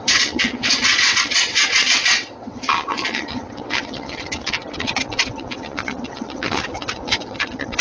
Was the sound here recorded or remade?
remade